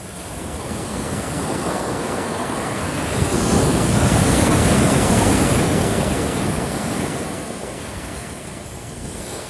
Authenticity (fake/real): fake